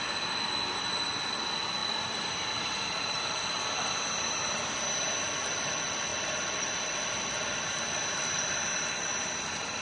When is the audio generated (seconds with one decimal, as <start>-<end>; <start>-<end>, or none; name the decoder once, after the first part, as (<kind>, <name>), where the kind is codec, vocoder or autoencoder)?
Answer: none